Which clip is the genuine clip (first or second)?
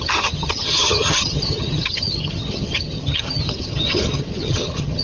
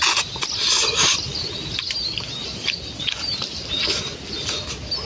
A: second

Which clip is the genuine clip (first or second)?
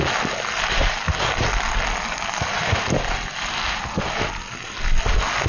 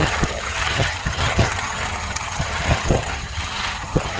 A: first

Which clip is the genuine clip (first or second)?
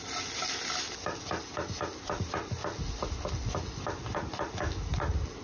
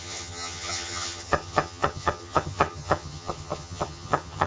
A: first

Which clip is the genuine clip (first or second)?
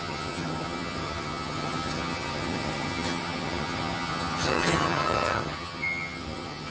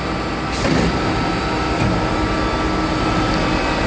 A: second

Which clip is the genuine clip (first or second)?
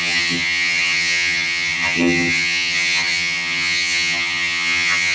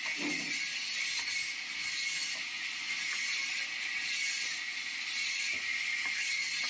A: second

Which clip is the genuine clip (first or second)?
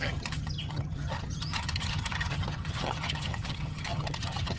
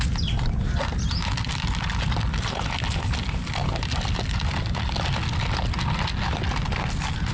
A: second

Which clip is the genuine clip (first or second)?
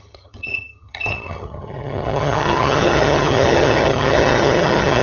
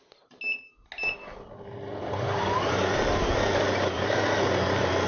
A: second